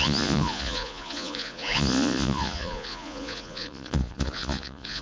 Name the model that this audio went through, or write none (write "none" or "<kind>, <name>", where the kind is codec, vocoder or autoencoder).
vocoder, Vocos